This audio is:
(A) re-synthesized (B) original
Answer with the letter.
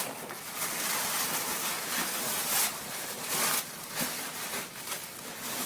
B